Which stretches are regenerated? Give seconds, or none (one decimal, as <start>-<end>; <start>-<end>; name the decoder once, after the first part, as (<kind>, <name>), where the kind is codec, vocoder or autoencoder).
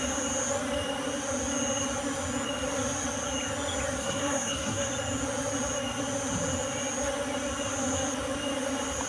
4.0-4.9 (codec, SNAC)